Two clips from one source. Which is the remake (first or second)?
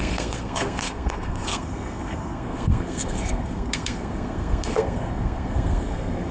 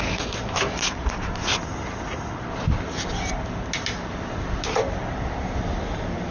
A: first